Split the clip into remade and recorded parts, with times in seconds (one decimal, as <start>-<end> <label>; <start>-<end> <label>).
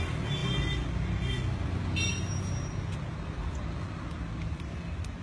0.0-5.2 recorded